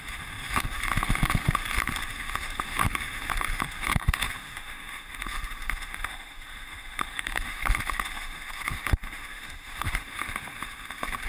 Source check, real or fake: fake